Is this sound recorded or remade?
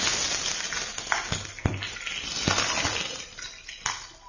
recorded